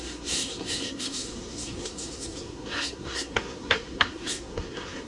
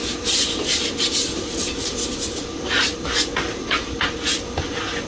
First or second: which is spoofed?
first